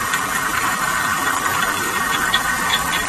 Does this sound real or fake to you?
fake